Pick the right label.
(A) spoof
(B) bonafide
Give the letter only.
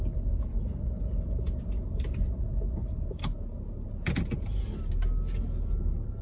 B